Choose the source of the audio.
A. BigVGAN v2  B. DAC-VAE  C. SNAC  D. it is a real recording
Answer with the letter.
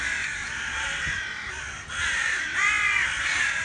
D